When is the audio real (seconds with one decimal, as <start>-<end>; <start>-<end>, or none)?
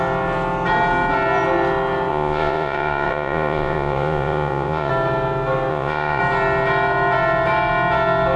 0.0-2.1; 4.9-5.7; 6.2-8.4